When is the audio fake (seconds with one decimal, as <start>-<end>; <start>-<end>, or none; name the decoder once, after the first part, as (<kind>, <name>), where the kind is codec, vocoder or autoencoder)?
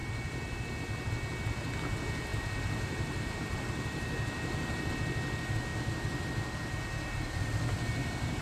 0.0-0.7 (vocoder, BigVGAN v2); 2.3-4.9; 5.7-8.4